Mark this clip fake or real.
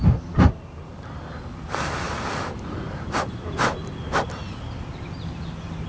real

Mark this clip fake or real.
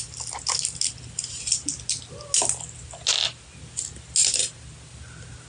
real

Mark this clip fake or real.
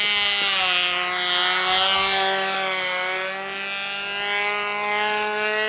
real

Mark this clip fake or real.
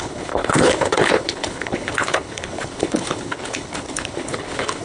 fake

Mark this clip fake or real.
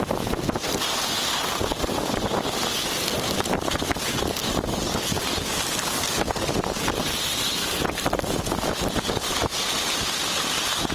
real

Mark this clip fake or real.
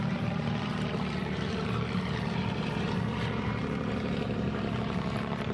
fake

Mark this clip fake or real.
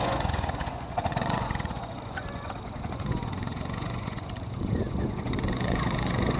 fake